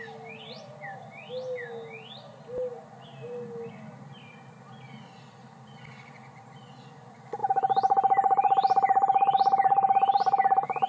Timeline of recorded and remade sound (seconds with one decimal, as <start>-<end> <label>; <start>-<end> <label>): 0.0-7.4 recorded; 7.4-10.9 remade